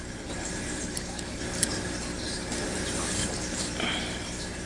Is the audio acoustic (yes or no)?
no